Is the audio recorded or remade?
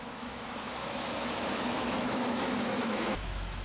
remade